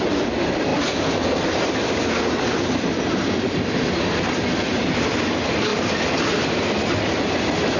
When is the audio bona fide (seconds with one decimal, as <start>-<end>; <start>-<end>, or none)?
0.0-7.8